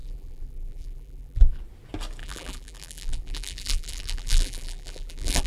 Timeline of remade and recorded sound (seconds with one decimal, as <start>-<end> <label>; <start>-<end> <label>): 0.0-1.6 remade; 1.6-2.2 recorded; 2.2-5.5 remade